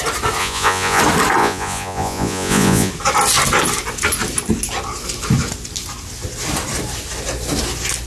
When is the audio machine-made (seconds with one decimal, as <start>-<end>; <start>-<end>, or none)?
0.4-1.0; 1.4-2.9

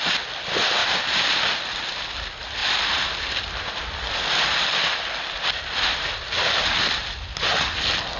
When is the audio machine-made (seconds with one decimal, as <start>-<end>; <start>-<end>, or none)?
none

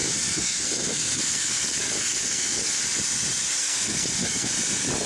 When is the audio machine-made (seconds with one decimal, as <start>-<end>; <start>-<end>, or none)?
0.0-2.8; 3.6-4.5